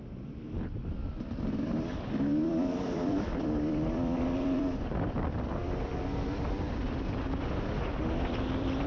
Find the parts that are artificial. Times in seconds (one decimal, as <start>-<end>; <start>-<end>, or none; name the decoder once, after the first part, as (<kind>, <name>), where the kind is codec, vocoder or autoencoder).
0.0-8.9 (vocoder, BigVGAN v2)